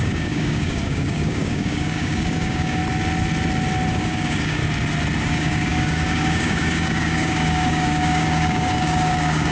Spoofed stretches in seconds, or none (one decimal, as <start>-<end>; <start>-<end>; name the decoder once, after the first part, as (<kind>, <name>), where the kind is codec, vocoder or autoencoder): 0.0-2.8 (codec, DAC); 3.9-4.6; 5.2-9.5